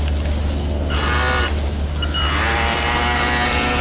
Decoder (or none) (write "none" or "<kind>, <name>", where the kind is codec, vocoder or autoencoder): none